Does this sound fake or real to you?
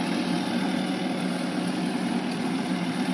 real